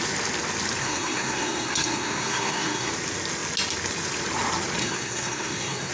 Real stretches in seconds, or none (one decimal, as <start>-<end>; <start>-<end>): 0.0-0.8; 2.9-4.8